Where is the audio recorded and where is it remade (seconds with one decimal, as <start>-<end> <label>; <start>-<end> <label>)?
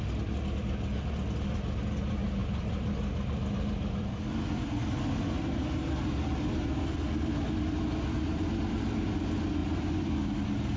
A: 0.0-2.4 recorded; 2.4-7.5 remade; 7.5-9.6 recorded; 9.6-10.8 remade